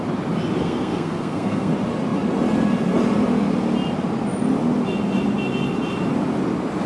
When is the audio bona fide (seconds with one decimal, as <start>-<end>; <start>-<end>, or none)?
0.0-0.6; 1.7-6.9